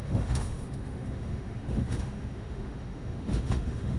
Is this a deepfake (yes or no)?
yes